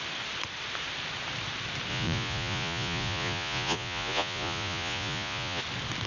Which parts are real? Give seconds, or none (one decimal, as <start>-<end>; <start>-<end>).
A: 0.0-1.9; 5.6-6.1